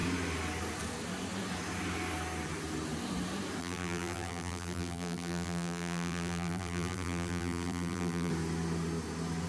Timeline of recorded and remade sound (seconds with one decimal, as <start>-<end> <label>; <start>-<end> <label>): 0.0-3.6 recorded; 3.6-8.3 remade; 8.3-9.5 recorded